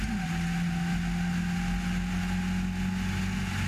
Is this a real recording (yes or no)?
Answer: yes